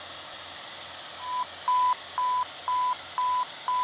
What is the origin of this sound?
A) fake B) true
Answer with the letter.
B